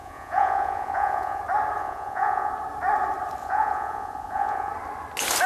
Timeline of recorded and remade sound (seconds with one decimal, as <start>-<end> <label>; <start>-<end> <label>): 0.0-1.4 remade; 1.4-1.8 recorded; 1.8-2.5 remade; 2.5-3.4 recorded; 3.4-4.7 remade; 4.7-5.5 recorded